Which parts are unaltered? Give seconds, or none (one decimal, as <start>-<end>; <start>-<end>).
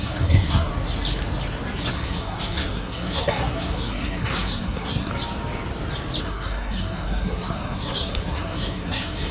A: 0.7-1.9; 5.1-6.2